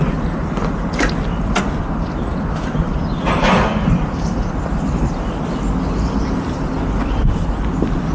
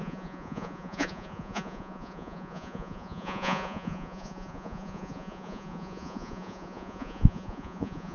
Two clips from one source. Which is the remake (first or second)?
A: second